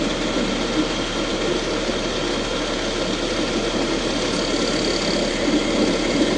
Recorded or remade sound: recorded